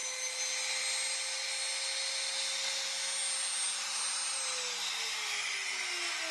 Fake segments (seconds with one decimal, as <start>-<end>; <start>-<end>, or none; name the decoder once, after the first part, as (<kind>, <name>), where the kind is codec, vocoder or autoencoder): none